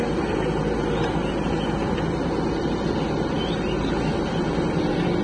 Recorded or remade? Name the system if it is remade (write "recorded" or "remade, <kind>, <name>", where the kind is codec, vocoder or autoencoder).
recorded